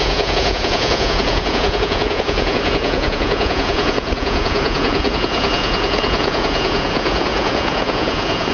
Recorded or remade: remade